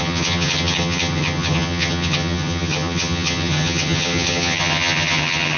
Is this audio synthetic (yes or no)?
yes